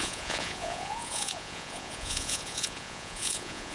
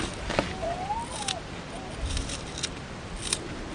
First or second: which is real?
second